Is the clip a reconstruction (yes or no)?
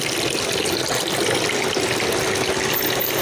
no